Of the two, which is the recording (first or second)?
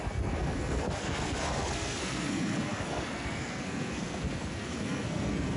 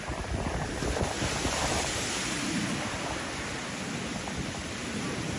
second